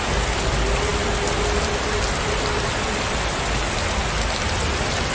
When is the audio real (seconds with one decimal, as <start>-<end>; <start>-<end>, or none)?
0.0-5.1